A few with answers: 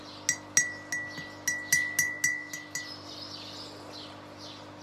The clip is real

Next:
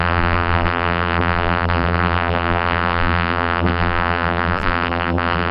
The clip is fake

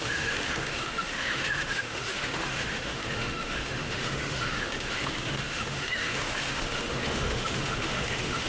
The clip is fake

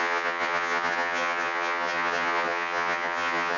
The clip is fake